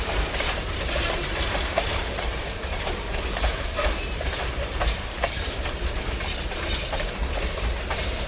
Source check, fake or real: fake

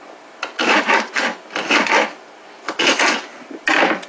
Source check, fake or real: real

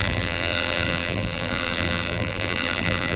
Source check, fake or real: fake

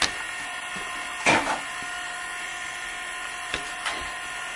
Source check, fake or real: real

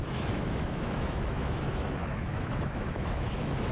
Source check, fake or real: fake